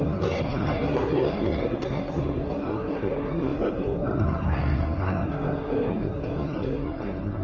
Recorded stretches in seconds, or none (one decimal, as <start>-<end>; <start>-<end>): none